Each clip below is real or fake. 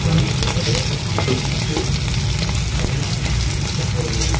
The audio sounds real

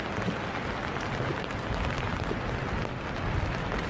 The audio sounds real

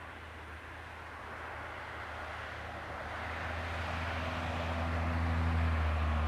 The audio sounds real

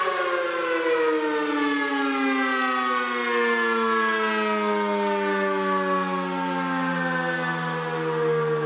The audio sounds real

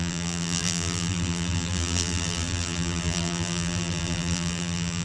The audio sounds fake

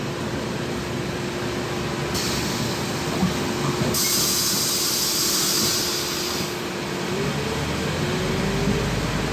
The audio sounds real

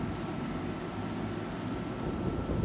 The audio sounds real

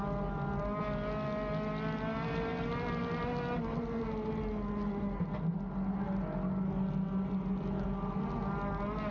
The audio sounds real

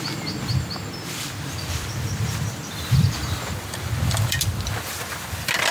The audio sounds fake